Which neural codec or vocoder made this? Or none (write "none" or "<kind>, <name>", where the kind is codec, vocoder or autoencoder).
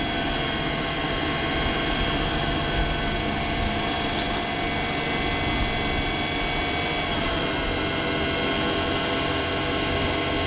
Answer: none